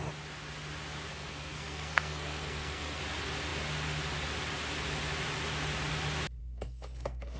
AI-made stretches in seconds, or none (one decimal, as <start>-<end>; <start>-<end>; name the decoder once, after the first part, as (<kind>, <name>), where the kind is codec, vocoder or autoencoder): 1.1-3.0 (codec, SNAC); 6.4-7.4